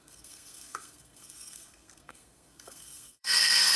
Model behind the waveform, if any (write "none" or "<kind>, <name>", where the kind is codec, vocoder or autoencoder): codec, SNAC